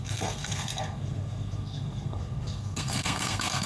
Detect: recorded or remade remade